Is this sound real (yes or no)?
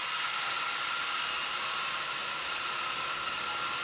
yes